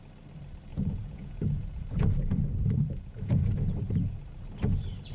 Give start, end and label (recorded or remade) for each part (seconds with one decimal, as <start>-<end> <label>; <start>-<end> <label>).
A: 0.0-0.7 recorded; 0.7-3.8 remade; 3.8-5.1 recorded